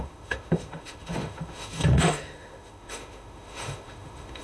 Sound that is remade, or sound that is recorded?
remade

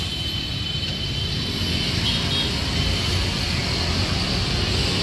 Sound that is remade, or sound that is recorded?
recorded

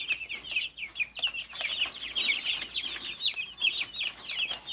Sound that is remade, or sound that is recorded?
recorded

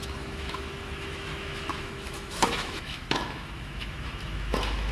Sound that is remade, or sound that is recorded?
remade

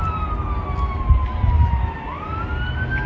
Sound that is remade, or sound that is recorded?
recorded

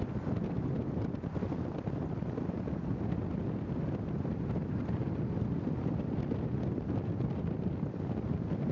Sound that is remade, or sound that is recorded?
recorded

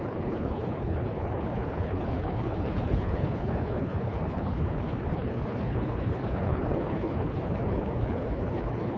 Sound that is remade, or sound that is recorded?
remade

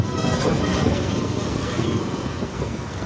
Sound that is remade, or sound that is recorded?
remade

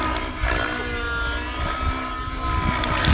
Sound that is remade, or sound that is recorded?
recorded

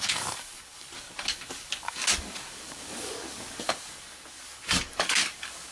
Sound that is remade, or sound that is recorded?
remade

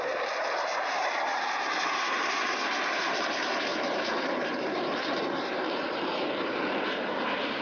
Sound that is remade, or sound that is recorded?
remade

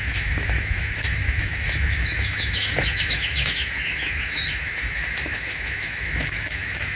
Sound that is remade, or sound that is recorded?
remade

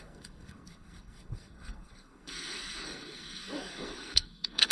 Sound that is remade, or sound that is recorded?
remade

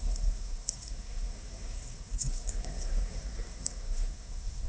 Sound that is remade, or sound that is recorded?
remade